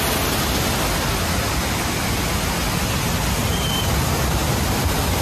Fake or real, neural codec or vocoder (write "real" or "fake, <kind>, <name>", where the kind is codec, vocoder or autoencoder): real